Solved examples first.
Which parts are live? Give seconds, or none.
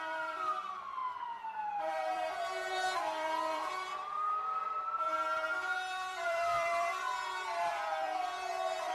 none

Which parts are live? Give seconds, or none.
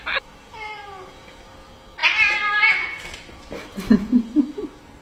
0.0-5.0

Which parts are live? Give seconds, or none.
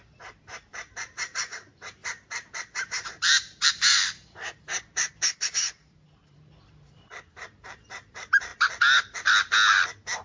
8.5-10.2